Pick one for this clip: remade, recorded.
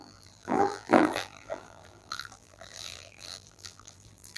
remade